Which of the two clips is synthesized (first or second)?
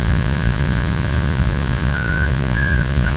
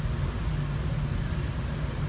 first